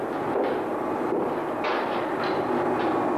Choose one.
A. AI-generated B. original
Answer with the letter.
B